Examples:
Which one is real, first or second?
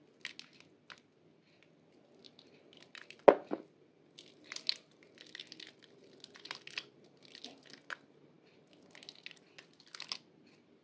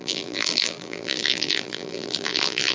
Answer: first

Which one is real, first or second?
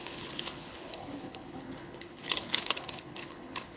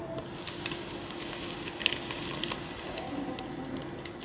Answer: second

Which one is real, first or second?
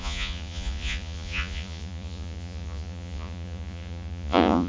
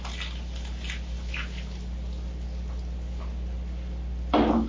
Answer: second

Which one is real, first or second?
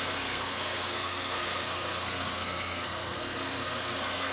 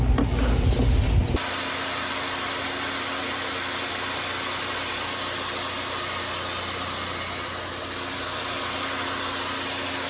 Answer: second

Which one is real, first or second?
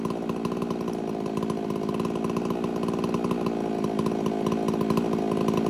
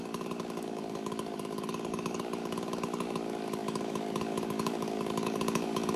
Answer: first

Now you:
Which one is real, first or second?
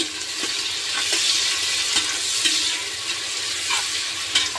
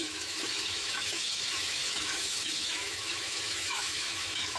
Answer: first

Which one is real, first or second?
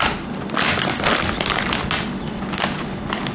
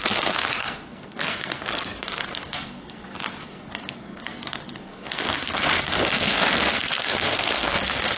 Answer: first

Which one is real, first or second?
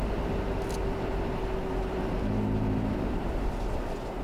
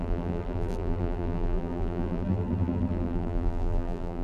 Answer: first